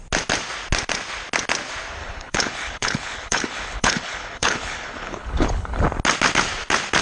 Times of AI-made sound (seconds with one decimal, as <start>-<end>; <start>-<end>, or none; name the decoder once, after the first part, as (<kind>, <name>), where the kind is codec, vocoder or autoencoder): 2.0-5.8 (codec, HILCodec)